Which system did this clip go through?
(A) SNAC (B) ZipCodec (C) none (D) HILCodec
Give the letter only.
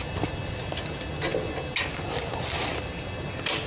C